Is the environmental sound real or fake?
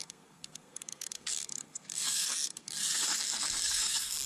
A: fake